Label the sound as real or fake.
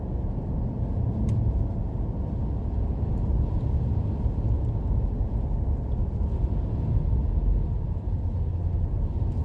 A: real